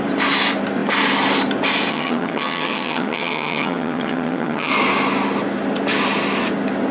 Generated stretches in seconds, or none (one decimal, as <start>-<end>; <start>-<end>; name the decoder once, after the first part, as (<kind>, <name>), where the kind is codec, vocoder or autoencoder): 1.9-4.7 (vocoder, HiFi-GAN)